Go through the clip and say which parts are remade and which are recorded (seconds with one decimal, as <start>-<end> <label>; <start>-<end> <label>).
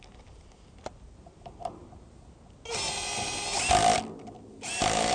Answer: 0.0-5.1 recorded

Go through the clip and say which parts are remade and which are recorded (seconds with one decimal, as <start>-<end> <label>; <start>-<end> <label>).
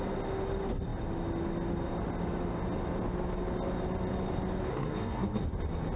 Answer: 0.0-4.7 recorded; 4.7-5.4 remade; 5.4-6.0 recorded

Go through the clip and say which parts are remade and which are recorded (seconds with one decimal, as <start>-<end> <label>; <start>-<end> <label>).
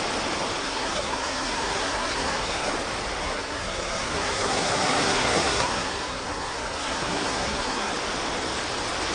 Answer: 0.0-0.6 recorded; 0.6-2.7 remade; 2.7-3.2 recorded; 3.2-7.9 remade; 7.9-9.1 recorded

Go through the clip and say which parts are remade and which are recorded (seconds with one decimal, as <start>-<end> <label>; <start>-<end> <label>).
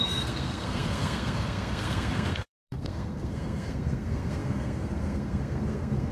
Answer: 0.0-6.1 remade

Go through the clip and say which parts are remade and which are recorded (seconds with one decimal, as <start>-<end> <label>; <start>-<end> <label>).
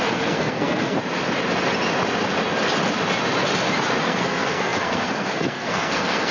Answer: 0.0-1.0 remade; 1.0-4.0 recorded; 4.0-6.3 remade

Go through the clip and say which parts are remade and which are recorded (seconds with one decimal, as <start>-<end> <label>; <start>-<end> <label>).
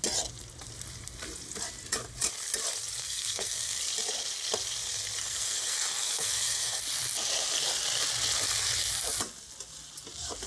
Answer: 0.0-3.0 recorded; 3.0-3.8 remade; 3.8-5.2 recorded; 5.2-6.8 remade; 6.8-10.5 recorded